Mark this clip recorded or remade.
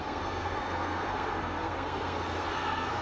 remade